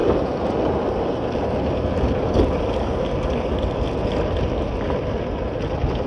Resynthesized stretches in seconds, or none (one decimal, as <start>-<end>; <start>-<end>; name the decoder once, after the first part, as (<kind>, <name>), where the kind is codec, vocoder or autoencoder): none